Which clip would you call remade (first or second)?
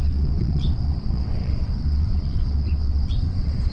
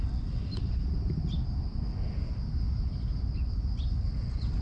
first